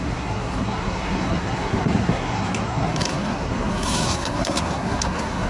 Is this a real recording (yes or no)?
no